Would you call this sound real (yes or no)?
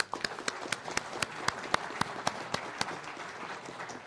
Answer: yes